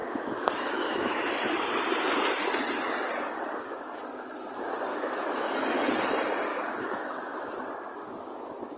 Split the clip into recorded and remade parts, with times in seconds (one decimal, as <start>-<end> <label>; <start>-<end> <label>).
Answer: 0.0-1.3 remade; 1.3-4.9 recorded; 4.9-5.6 remade; 5.6-6.5 recorded; 6.5-7.5 remade; 7.5-8.8 recorded